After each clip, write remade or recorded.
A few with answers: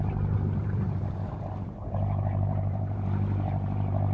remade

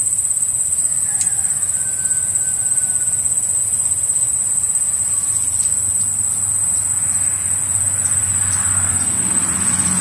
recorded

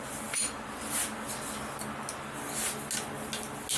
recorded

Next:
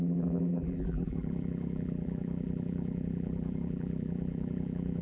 remade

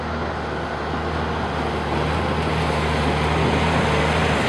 recorded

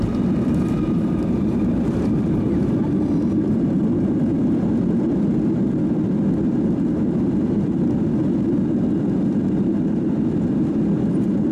remade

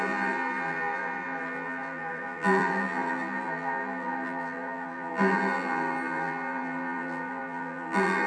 remade